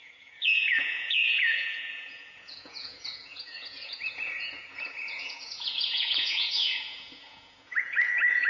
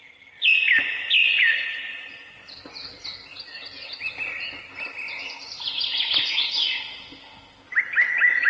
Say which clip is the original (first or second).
second